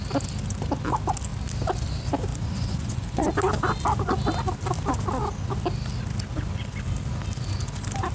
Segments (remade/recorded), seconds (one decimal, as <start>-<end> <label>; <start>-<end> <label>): 0.0-2.3 recorded; 2.3-3.3 remade; 3.3-8.1 recorded